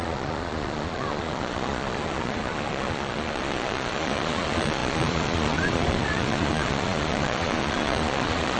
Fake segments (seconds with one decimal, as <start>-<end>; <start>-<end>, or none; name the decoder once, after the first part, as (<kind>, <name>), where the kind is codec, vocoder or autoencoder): 0.0-8.6 (vocoder, Vocos)